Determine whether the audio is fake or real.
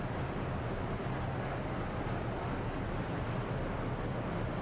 real